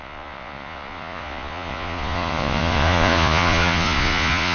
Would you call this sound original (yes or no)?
no